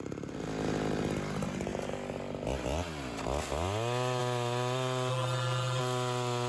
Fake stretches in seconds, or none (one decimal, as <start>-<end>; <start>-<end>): 5.1-5.8